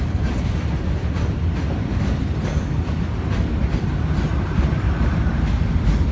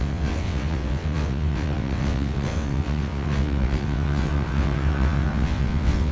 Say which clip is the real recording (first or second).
first